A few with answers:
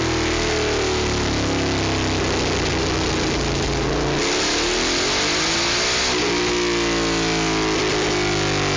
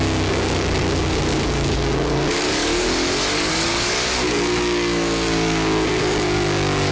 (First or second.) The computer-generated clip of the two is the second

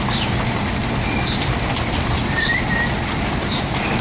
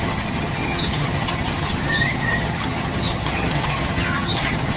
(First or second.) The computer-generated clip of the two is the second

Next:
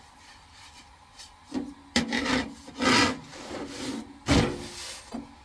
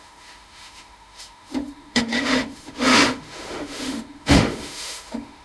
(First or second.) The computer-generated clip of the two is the second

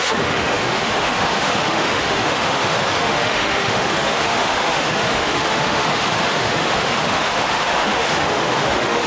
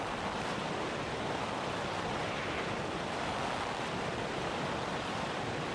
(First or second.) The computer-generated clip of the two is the first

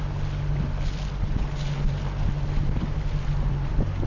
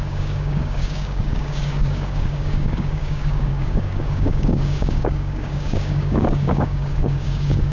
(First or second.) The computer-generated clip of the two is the second